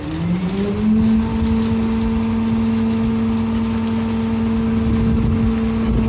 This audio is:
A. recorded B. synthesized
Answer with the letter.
A